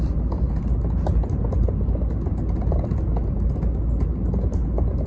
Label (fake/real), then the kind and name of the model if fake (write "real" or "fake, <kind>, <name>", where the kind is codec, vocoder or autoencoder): real